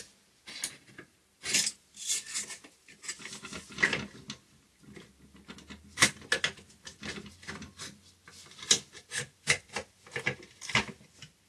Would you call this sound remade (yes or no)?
no